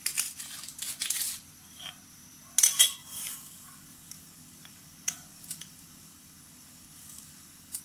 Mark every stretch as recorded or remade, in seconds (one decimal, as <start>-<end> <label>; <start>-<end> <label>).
0.0-3.0 recorded; 3.0-7.8 remade